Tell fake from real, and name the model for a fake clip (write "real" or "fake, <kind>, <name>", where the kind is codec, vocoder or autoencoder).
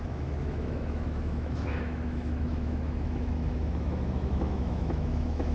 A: fake, autoencoder, DAC-VAE